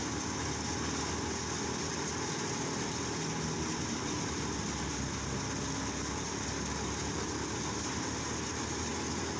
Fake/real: real